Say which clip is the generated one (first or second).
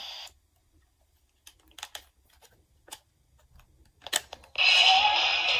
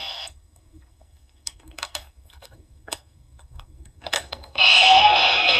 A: second